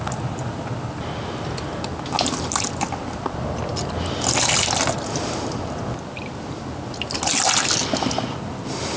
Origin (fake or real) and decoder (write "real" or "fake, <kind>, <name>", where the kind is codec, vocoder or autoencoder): real